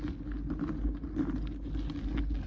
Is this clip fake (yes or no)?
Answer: no